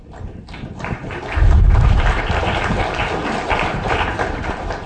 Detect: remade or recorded remade